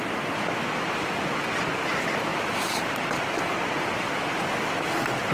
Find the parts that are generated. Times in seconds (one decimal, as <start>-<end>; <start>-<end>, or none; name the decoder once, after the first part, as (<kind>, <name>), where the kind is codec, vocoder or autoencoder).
none